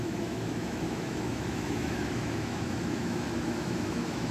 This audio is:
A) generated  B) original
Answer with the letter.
A